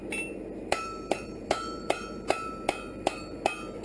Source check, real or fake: fake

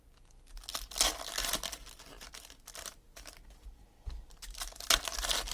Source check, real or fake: real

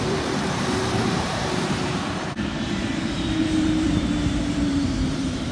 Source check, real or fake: fake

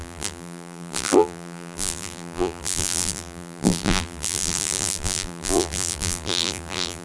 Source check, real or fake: fake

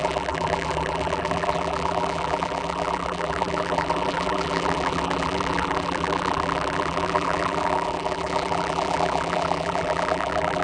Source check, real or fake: fake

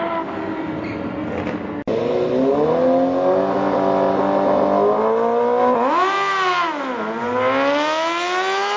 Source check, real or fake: real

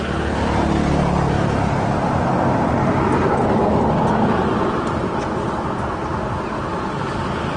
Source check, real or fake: real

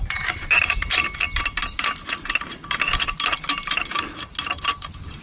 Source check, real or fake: real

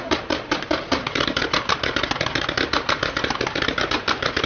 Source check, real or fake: fake